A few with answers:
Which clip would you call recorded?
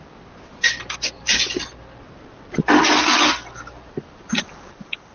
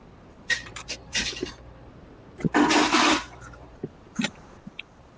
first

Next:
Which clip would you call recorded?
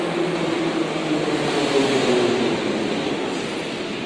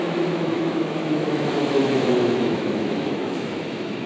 first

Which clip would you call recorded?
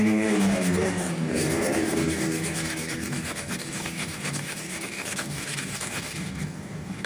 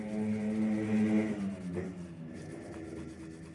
second